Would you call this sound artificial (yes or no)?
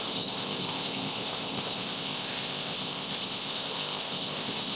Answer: yes